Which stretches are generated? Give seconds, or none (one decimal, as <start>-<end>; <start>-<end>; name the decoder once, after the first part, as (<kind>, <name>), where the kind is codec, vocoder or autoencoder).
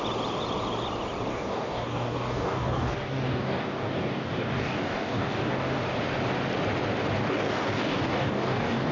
1.3-5.8 (codec, DAC); 7.2-8.9